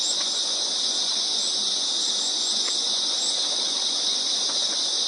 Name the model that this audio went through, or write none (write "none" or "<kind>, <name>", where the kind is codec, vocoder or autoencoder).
vocoder, Vocos